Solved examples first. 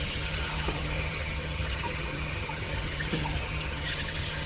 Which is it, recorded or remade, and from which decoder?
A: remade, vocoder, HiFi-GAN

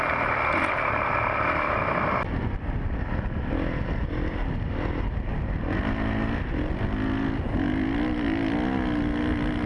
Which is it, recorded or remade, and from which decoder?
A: recorded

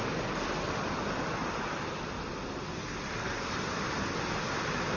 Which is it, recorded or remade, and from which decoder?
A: recorded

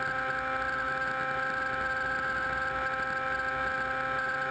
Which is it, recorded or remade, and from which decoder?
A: recorded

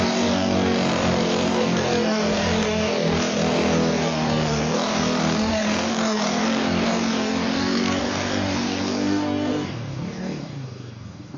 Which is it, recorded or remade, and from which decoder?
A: remade, codec, DAC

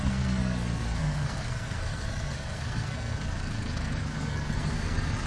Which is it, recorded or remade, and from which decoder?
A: remade, codec, SNAC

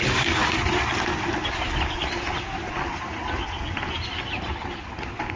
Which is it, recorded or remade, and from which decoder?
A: recorded